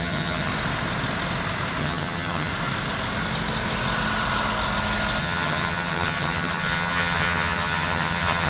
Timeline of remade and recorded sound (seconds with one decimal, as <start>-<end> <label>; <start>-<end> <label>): 0.0-0.5 remade; 0.5-1.8 recorded; 1.8-2.5 remade; 2.5-5.2 recorded; 5.2-8.5 remade